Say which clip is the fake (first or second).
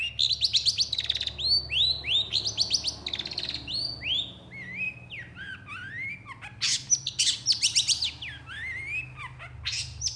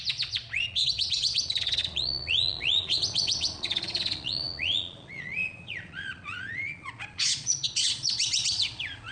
second